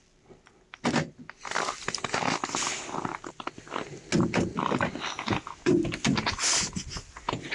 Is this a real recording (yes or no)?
yes